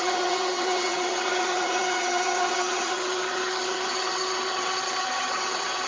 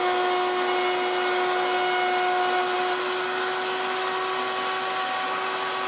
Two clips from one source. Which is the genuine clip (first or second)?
second